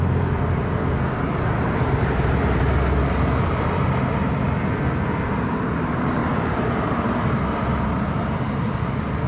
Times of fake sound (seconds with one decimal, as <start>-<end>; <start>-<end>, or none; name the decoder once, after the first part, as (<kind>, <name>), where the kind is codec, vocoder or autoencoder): 1.3-2.6 (vocoder, BigVGAN v2); 6.2-6.9